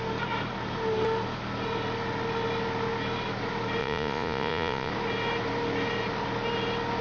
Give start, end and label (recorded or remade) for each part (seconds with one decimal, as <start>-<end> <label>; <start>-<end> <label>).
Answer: 0.0-3.8 recorded; 3.8-4.9 remade; 4.9-7.0 recorded